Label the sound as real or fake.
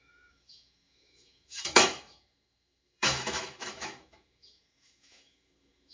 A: fake